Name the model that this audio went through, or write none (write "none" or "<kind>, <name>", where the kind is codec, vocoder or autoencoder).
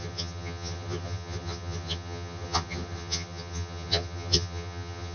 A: vocoder, HiFi-GAN